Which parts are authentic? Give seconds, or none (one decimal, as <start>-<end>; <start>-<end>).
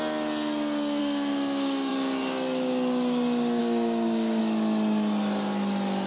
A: 0.0-1.0; 1.9-3.6; 4.4-6.1